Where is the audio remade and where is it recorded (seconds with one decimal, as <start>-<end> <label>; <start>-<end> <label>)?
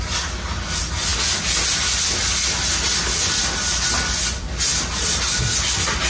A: 0.0-6.1 recorded